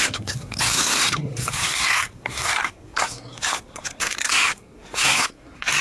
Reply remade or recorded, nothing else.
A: remade